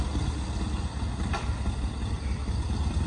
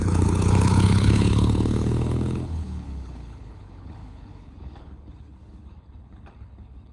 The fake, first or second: second